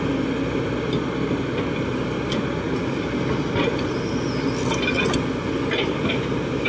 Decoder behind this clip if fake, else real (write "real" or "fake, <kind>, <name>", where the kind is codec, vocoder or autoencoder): real